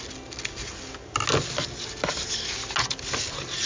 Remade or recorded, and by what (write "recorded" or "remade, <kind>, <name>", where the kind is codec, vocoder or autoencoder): recorded